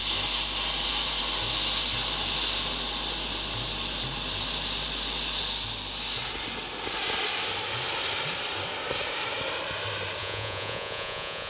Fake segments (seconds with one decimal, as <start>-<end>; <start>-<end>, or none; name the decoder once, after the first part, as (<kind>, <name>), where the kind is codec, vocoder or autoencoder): 10.2-11.5 (vocoder, Vocos)